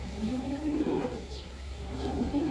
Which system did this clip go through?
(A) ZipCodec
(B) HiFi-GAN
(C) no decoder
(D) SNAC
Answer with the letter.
D